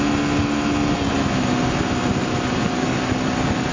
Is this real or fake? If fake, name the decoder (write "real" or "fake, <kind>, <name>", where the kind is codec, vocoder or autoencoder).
real